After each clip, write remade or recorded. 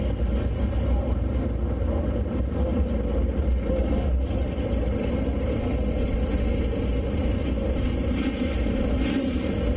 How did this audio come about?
recorded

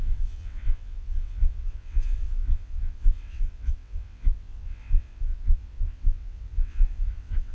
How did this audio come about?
remade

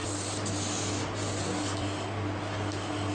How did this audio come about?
recorded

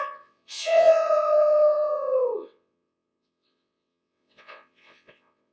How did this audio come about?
remade